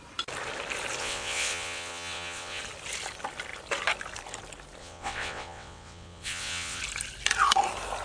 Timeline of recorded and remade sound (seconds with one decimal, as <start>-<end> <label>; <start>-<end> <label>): 0.0-1.0 recorded; 1.0-2.6 remade; 2.6-4.8 recorded; 4.8-6.8 remade; 6.8-8.0 recorded